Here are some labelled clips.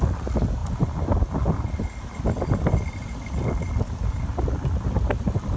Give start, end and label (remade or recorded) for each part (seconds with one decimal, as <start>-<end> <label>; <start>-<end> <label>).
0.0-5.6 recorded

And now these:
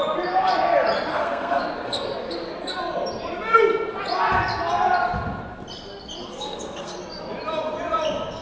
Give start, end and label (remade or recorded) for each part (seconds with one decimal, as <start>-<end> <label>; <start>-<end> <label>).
0.0-1.1 recorded; 1.1-1.6 remade; 1.6-6.3 recorded; 6.3-7.0 remade; 7.0-8.4 recorded

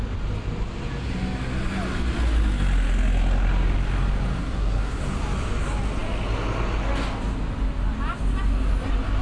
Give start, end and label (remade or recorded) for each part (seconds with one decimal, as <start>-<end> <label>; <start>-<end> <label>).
0.0-4.4 recorded; 4.4-5.0 remade; 5.0-9.2 recorded

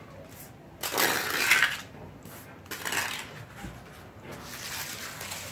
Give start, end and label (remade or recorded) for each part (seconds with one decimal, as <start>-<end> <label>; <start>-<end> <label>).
0.0-5.5 recorded

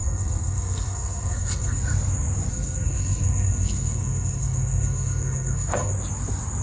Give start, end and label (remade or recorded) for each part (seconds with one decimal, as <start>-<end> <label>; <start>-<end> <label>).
0.0-1.8 remade; 1.8-2.5 recorded; 2.5-5.9 remade; 5.9-6.6 recorded

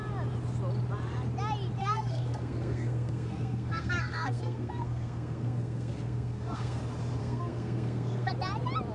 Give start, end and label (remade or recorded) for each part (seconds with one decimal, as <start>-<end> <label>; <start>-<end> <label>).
0.0-1.8 recorded; 1.8-6.8 remade; 6.8-7.2 recorded; 7.2-8.3 remade; 8.3-8.9 recorded